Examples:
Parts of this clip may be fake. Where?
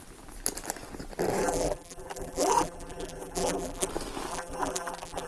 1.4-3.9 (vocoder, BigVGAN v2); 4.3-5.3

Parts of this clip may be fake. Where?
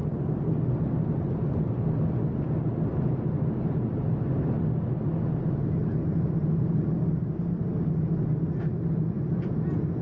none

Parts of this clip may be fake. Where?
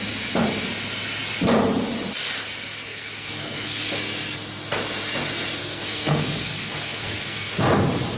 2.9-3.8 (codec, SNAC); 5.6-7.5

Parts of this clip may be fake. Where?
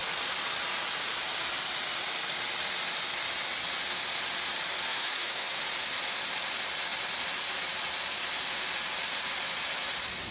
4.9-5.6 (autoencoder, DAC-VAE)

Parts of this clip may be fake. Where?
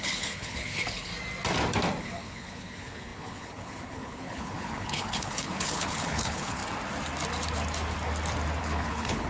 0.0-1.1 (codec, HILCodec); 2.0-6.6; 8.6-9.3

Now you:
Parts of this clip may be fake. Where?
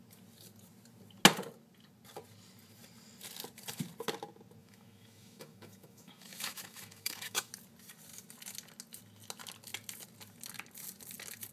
4.6-7.5 (autoencoder, DAC-VAE)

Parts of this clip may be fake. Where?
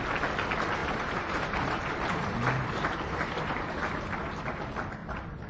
0.8-4.1 (vocoder, BigVGAN v2); 5.0-5.5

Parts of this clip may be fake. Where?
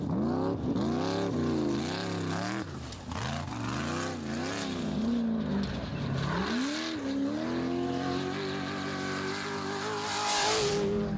none